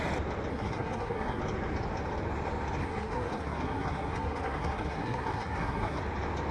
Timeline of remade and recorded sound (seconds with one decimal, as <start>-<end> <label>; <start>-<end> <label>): 0.0-0.5 recorded; 0.5-1.4 remade; 1.4-2.8 recorded; 2.8-6.0 remade; 6.0-6.5 recorded